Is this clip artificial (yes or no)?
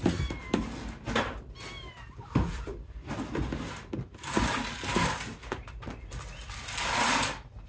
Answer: no